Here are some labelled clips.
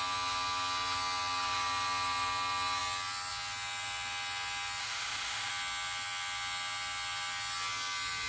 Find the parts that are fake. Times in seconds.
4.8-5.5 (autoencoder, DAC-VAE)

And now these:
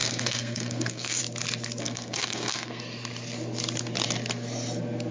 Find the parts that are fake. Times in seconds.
0.0-1.2 (codec, SNAC); 1.8-2.8

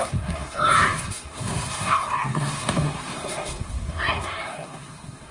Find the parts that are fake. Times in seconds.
0.0-5.3 (codec, SNAC)

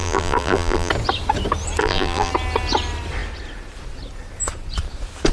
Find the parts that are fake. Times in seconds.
0.0-0.9 (vocoder, BigVGAN v2); 1.8-2.3

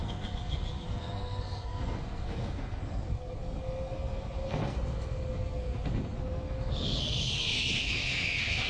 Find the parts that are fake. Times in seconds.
0.0-8.7 (codec, SNAC)

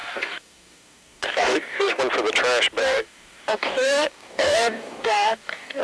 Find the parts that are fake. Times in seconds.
0.0-2.0 (codec, DAC); 2.8-5.8

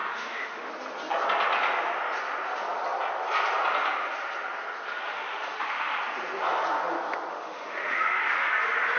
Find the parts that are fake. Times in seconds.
0.0-0.7 (autoencoder, DAC-VAE); 5.1-6.0; 7.3-8.5

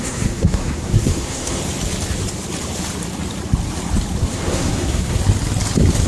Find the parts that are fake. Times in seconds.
0.0-1.6 (codec, SNAC); 4.2-5.2